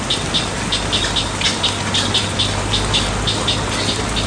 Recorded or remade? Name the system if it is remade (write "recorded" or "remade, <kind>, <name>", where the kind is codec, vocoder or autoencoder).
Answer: recorded